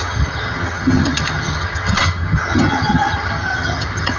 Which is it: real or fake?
fake